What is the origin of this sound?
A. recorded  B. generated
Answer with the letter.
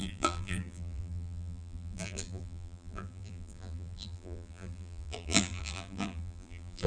B